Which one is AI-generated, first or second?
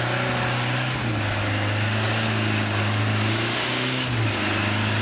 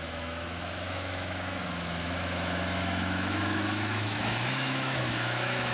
second